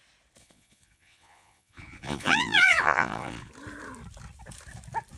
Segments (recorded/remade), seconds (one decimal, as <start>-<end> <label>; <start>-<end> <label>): 0.0-0.4 recorded; 0.4-3.5 remade; 3.5-5.2 recorded